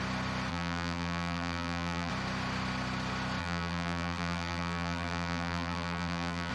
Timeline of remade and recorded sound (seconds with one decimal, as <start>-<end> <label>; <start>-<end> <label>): 0.0-0.5 recorded; 0.5-2.1 remade; 2.1-3.4 recorded; 3.4-6.5 remade